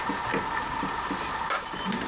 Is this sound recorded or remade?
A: recorded